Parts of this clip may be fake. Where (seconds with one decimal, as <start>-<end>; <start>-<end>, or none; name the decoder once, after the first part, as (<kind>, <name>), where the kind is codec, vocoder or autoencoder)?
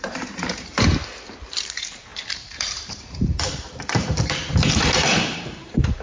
0.0-6.0 (vocoder, BigVGAN v2)